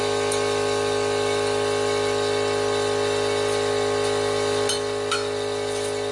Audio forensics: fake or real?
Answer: real